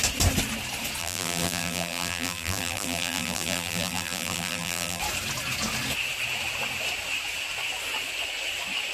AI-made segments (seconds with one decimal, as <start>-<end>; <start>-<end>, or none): 1.0-5.0